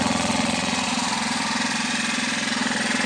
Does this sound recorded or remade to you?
remade